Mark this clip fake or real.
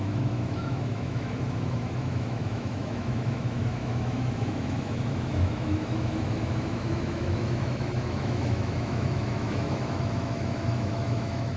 fake